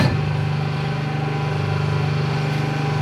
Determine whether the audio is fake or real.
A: real